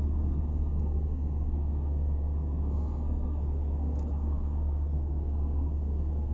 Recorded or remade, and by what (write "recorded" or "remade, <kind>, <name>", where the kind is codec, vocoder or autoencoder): remade, codec, SNAC